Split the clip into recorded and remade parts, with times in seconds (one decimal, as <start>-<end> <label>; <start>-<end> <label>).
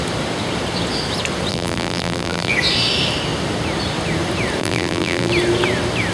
0.0-1.5 recorded; 1.5-2.5 remade; 2.5-4.6 recorded; 4.6-5.3 remade; 5.3-6.1 recorded